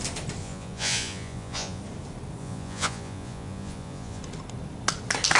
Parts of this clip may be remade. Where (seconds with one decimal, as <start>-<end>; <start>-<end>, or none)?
0.4-1.8; 2.4-4.2